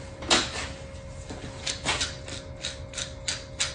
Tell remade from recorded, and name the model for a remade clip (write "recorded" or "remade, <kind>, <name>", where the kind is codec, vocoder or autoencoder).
recorded